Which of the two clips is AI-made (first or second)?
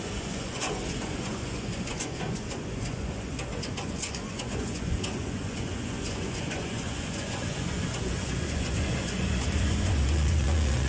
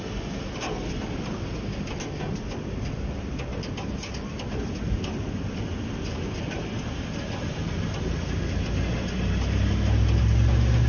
first